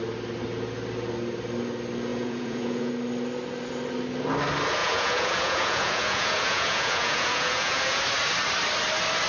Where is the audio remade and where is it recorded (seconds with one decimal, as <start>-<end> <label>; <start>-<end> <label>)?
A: 0.0-2.1 recorded; 2.1-2.9 remade; 2.9-4.8 recorded; 4.8-8.0 remade; 8.0-9.3 recorded